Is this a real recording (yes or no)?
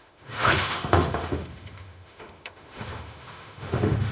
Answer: no